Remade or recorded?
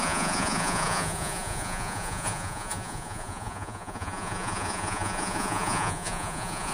remade